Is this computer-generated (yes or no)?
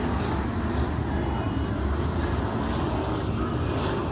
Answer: no